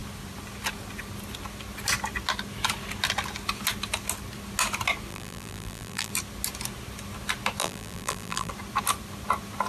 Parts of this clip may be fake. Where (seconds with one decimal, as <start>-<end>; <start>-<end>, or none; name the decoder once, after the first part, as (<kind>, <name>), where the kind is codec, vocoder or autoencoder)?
5.1-6.1 (vocoder, BigVGAN v2); 7.6-8.5